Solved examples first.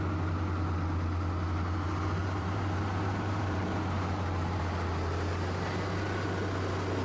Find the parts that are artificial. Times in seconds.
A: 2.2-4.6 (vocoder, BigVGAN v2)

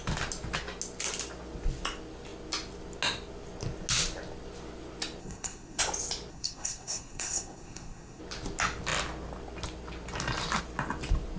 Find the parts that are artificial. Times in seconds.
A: 5.2-5.8 (codec, SNAC); 6.3-8.2

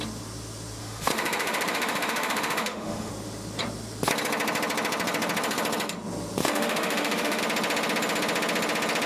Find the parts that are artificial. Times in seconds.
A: 0.8-3.1 (autoencoder, DAC-VAE); 6.4-7.4

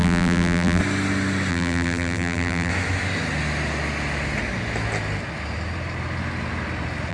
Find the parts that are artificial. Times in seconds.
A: 0.0-0.8 (vocoder, BigVGAN v2); 1.5-2.7

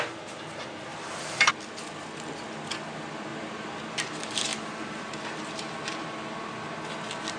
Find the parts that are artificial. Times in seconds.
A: 0.9-1.5 (vocoder, BigVGAN v2); 3.3-3.8; 4.5-6.3

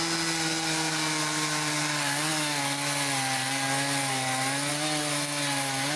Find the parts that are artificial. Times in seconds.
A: none

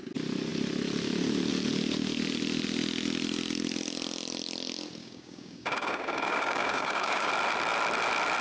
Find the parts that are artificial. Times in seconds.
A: 5.0-7.3 (codec, DAC)